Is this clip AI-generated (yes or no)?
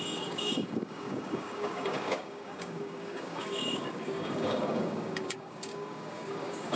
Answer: yes